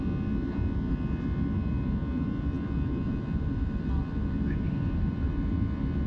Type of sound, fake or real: real